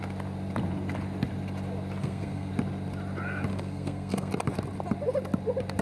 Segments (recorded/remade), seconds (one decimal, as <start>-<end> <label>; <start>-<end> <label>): 0.0-2.0 recorded; 2.0-2.5 remade; 2.5-3.5 recorded; 3.5-4.3 remade; 4.3-5.8 recorded